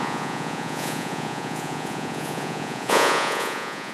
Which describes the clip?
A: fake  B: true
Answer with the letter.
A